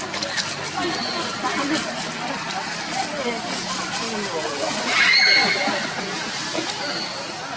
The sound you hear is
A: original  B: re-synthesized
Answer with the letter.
A